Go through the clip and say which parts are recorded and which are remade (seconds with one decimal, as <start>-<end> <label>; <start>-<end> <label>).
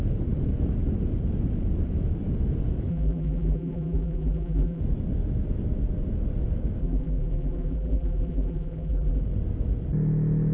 0.0-2.9 recorded; 2.9-4.8 remade; 4.8-6.8 recorded; 6.8-9.2 remade; 9.2-10.5 recorded